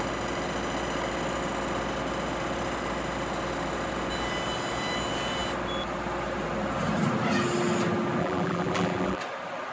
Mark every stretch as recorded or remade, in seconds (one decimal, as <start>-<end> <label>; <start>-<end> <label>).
0.0-8.2 recorded; 8.2-9.2 remade; 9.2-9.7 recorded